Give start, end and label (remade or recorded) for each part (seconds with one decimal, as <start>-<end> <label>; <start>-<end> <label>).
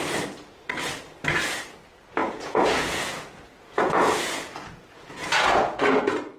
0.0-2.2 recorded; 2.2-6.0 remade; 6.0-6.4 recorded